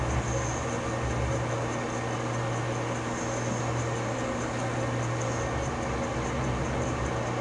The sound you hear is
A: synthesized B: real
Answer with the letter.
B